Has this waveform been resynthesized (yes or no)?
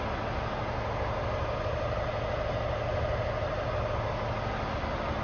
no